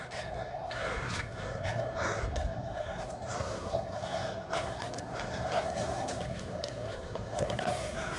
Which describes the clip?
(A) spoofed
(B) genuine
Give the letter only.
A